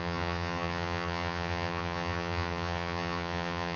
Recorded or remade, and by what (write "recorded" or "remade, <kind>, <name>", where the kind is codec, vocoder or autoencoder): remade, vocoder, HiFi-GAN